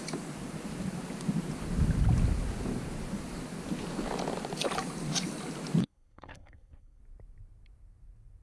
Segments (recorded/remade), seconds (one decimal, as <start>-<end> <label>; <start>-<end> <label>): 0.0-5.8 recorded; 5.8-7.0 remade; 7.0-8.4 recorded

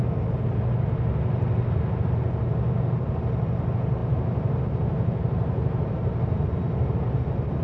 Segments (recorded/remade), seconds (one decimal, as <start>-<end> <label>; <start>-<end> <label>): 0.0-7.6 recorded